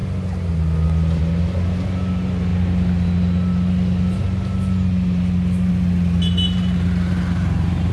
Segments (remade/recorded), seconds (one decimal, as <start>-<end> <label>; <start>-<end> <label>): 0.0-7.9 recorded